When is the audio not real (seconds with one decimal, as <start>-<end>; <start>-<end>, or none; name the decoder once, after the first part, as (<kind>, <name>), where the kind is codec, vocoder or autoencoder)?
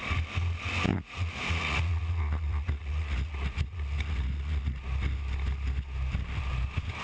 0.9-4.8 (vocoder, Vocos)